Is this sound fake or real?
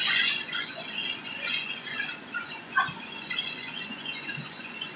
fake